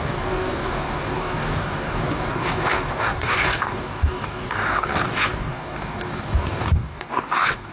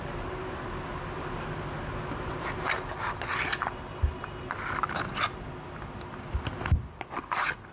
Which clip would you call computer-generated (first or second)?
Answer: first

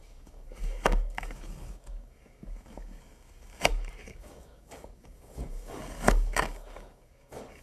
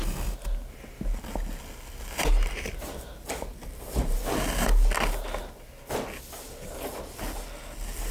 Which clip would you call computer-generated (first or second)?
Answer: first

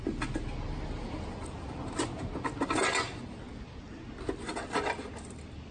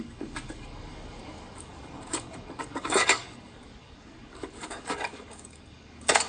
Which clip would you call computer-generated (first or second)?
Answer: second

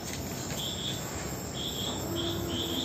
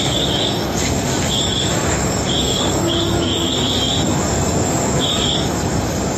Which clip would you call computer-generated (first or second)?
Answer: second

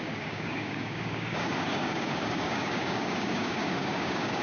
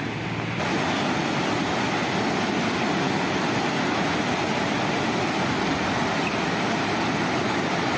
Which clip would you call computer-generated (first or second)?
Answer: first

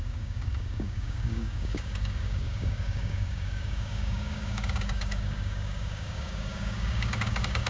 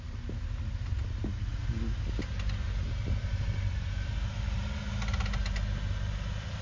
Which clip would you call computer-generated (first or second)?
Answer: first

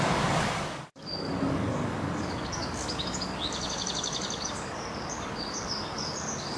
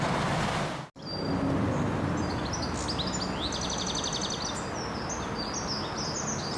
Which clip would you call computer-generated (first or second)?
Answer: first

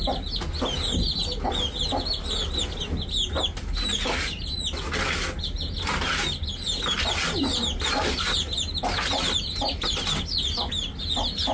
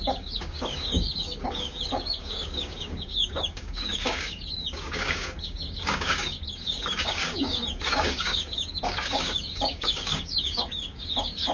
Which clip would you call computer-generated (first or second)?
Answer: second